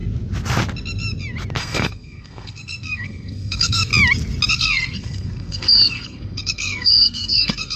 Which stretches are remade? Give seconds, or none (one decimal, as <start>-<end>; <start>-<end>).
1.6-3.9; 4.5-7.8